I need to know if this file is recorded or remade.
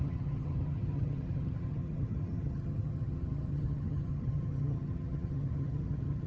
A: remade